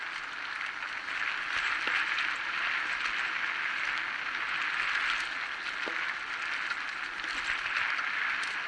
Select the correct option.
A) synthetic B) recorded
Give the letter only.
B